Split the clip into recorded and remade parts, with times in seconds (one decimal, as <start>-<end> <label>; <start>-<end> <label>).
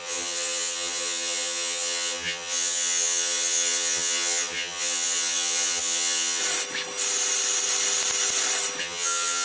0.0-6.4 remade; 6.4-8.8 recorded; 8.8-9.4 remade